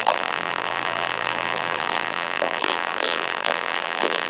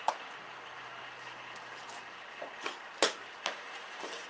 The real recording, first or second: second